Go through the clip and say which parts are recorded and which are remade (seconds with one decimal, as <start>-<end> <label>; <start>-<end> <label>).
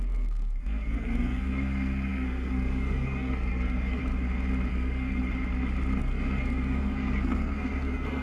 0.0-4.0 remade; 4.0-4.7 recorded; 4.7-5.2 remade; 5.2-6.0 recorded; 6.0-8.2 remade